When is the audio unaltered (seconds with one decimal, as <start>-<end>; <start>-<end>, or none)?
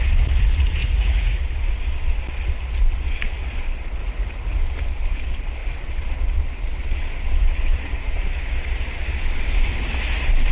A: 0.0-0.8; 1.4-4.0; 4.6-10.5